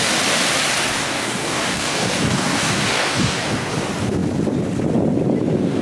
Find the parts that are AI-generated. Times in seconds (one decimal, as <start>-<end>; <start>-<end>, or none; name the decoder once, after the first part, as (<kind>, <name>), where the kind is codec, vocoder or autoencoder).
0.9-3.7 (codec, DAC)